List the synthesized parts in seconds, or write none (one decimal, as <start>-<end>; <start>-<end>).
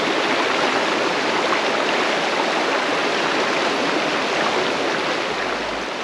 none